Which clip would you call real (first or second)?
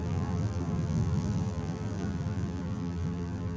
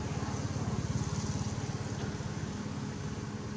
second